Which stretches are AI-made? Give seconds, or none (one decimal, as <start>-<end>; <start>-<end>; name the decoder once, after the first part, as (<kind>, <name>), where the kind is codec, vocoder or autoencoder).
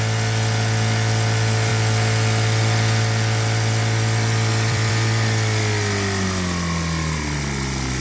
1.7-4.9 (vocoder, BigVGAN v2)